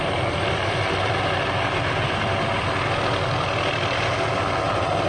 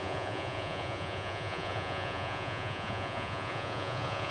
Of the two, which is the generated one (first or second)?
second